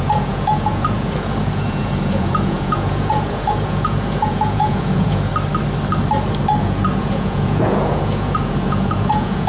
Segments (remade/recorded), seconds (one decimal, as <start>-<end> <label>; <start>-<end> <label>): 0.0-5.3 remade; 5.3-6.6 recorded; 6.6-9.5 remade

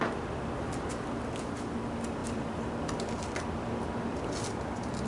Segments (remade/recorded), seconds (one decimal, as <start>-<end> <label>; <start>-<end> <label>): 0.0-5.1 recorded

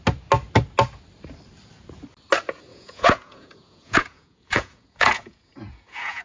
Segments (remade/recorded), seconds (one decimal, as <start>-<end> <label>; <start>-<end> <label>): 0.0-2.7 recorded; 2.7-6.2 remade

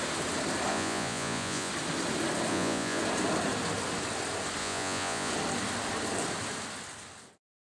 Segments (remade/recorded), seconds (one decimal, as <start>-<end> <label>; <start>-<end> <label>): 0.0-0.7 recorded; 0.7-1.7 remade; 1.7-2.5 recorded; 2.5-3.0 remade; 3.0-4.6 recorded; 4.6-5.3 remade; 5.3-7.8 recorded

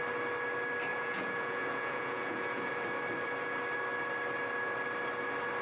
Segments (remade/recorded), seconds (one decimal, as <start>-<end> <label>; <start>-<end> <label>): 0.0-0.9 recorded; 0.9-2.7 remade; 2.7-5.6 recorded

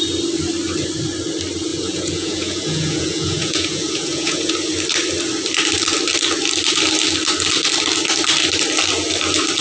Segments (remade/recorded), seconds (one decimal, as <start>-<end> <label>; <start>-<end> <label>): 0.0-1.7 recorded; 1.7-4.5 remade; 4.5-9.6 recorded

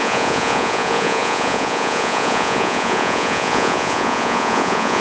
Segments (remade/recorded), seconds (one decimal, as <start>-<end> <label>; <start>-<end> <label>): 0.0-5.0 remade

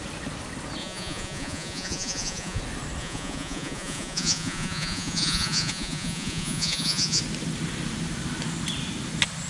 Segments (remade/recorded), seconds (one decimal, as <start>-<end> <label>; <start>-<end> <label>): 0.0-0.8 recorded; 0.8-2.6 remade; 2.6-3.0 recorded; 3.0-7.2 remade; 7.2-9.5 recorded